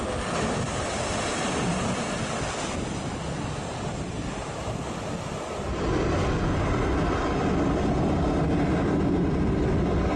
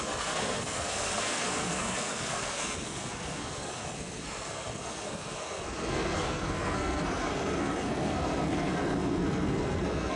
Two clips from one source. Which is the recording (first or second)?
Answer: first